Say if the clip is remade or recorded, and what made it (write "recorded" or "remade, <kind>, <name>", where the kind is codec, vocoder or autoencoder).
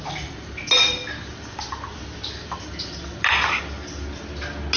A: recorded